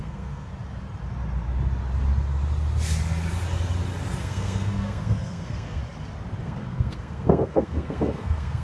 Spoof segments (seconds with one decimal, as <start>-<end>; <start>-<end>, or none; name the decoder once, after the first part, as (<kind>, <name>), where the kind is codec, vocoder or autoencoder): 0.0-0.5 (codec, SNAC); 4.2-5.8; 6.4-8.6